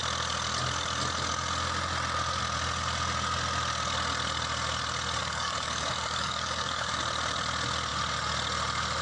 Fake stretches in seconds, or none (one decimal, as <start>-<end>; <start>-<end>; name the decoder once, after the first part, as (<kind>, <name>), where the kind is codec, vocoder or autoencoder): 5.2-7.0 (codec, DAC)